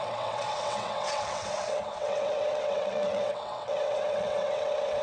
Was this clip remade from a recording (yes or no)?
yes